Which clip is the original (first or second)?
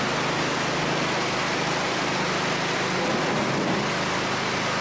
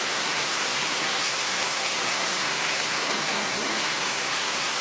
first